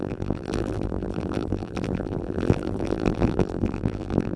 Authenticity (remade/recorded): remade